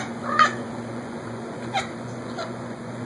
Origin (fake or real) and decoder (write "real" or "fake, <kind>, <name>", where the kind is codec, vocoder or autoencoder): fake, vocoder, Vocos